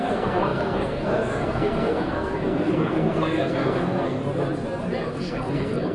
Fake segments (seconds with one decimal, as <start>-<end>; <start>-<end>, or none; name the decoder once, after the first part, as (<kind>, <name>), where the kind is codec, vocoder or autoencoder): 0.0-4.2 (codec, SNAC); 5.1-5.9